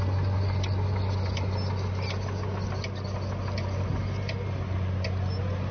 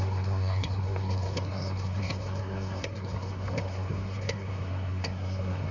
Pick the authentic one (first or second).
first